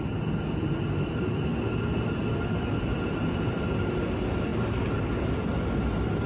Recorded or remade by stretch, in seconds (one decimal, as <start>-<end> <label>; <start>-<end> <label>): 0.0-4.5 recorded; 4.5-5.1 remade; 5.1-6.3 recorded